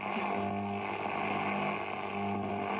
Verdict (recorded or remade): recorded